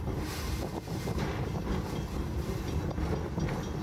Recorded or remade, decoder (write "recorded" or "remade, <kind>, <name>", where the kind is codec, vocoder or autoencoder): recorded